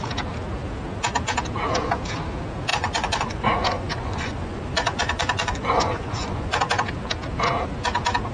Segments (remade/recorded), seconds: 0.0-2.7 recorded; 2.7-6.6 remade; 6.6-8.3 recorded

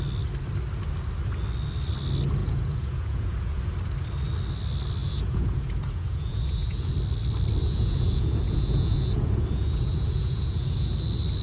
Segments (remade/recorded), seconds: 0.0-2.4 recorded; 2.4-3.6 remade; 3.6-5.0 recorded; 5.0-6.9 remade; 6.9-7.6 recorded; 7.6-10.9 remade; 10.9-11.4 recorded